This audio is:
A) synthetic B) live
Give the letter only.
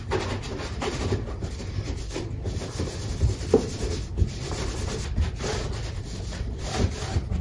B